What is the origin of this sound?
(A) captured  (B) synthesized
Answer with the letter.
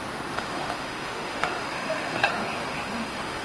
B